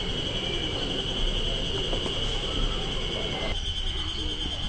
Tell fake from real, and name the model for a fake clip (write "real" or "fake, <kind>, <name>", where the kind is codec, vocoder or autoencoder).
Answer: real